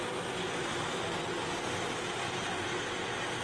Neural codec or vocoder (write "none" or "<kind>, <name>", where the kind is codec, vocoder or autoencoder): none